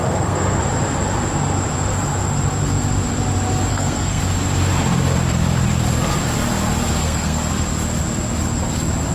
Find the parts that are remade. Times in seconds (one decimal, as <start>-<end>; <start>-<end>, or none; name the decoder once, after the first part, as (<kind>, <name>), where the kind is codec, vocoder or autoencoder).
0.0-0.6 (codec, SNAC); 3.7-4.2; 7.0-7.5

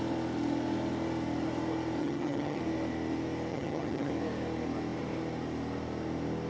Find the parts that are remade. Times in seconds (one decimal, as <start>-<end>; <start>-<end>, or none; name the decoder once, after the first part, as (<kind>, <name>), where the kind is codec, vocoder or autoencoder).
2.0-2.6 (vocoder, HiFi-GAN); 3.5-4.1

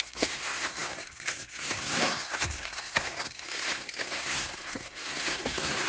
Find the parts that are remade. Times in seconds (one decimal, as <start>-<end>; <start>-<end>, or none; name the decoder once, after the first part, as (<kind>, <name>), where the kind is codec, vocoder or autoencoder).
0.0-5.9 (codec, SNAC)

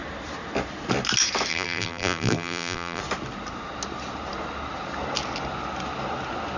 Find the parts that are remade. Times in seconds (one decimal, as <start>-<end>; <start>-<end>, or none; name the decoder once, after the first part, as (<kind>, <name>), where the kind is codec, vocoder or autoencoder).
1.5-3.0 (vocoder, BigVGAN v2)